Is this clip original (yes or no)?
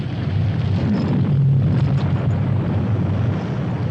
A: yes